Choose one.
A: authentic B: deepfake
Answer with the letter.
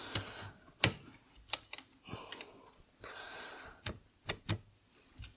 A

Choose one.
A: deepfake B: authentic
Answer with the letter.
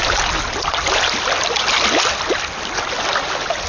B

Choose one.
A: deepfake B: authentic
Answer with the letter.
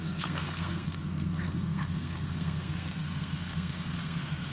A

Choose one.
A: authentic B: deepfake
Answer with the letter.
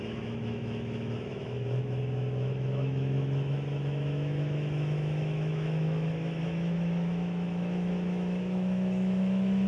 B